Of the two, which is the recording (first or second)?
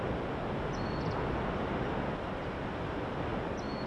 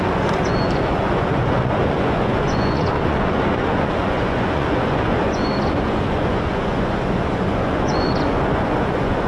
first